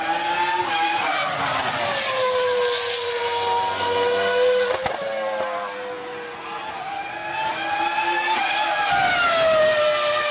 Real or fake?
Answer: real